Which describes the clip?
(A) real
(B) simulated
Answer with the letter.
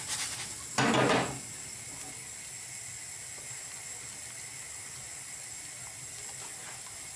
A